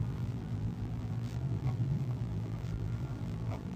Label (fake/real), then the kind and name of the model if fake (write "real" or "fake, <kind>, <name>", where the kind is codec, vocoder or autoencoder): fake, vocoder, BigVGAN v2